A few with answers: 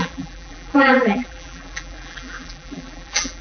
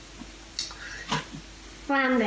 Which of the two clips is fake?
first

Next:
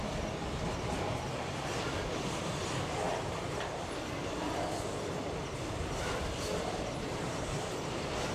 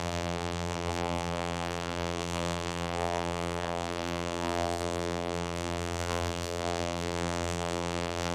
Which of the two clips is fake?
second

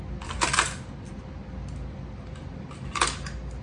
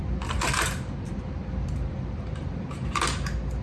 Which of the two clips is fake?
second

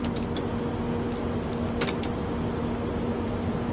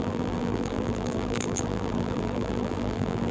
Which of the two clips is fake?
second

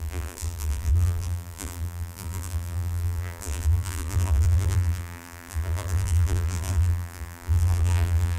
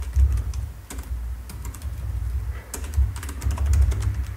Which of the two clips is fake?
first